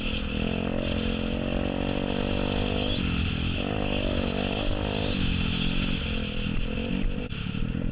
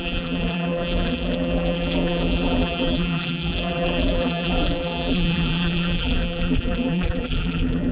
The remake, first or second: second